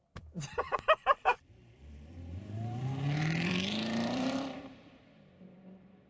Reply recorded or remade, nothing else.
remade